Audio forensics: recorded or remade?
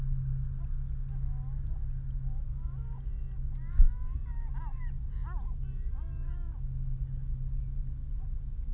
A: recorded